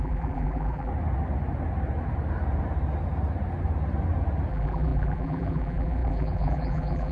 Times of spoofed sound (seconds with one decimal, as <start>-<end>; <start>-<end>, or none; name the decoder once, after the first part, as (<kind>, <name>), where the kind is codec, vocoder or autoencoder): 0.0-0.9 (vocoder, BigVGAN v2); 4.5-7.1